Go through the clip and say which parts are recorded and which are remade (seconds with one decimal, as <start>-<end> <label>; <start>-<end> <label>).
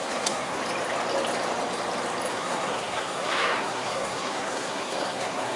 0.0-0.6 remade; 0.6-2.3 recorded; 2.3-5.6 remade